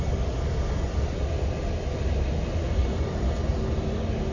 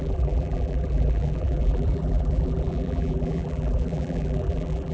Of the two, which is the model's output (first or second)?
second